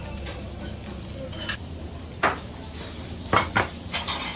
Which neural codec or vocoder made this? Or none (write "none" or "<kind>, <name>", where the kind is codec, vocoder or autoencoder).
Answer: none